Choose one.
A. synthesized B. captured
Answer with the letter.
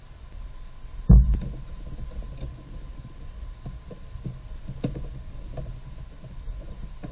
B